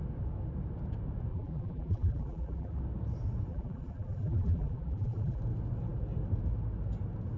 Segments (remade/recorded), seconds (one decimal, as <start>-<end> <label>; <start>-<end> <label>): 0.0-1.3 recorded; 1.3-2.8 remade; 2.8-3.5 recorded; 3.5-5.4 remade; 5.4-7.4 recorded

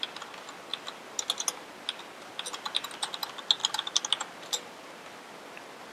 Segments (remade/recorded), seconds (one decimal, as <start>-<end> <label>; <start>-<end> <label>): 0.0-5.9 recorded

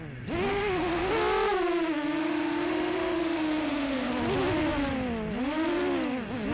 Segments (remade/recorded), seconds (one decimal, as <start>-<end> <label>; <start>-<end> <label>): 0.0-0.5 recorded; 0.5-1.1 remade; 1.1-2.2 recorded; 2.2-4.1 remade; 4.1-6.5 recorded

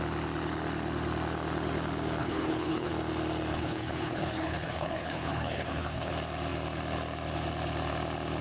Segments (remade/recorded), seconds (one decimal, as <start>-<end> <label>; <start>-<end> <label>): 0.0-2.2 recorded; 2.2-2.9 remade; 2.9-3.5 recorded; 3.5-6.1 remade; 6.1-8.4 recorded